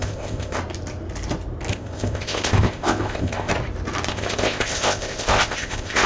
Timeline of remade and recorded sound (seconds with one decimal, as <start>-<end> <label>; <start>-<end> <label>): 0.0-0.6 remade; 0.6-1.7 recorded; 1.7-3.5 remade; 3.5-4.1 recorded; 4.1-6.1 remade